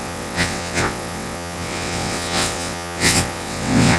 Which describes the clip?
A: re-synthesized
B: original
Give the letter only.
A